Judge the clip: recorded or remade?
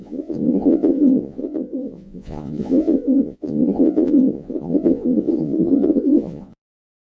remade